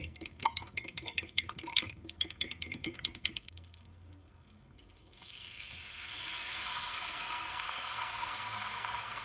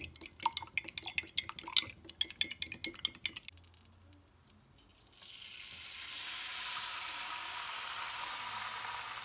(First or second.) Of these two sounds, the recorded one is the second